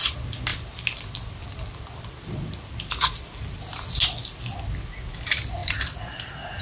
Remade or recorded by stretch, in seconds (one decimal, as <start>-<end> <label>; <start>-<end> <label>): 0.0-0.5 recorded; 0.5-3.9 remade; 3.9-5.6 recorded; 5.6-6.6 remade